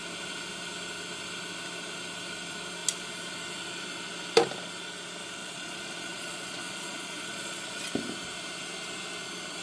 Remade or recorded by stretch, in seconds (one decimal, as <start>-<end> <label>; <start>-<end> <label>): 0.0-5.4 recorded; 5.4-7.8 remade; 7.8-9.6 recorded